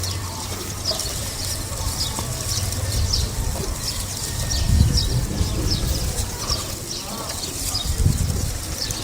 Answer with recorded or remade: remade